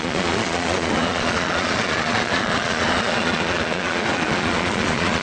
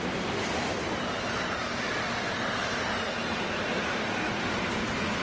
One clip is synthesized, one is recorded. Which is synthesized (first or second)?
first